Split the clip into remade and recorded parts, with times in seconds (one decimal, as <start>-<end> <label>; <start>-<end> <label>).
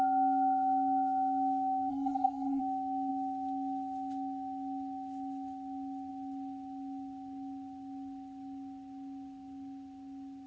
0.0-1.9 recorded; 1.9-2.6 remade; 2.6-10.5 recorded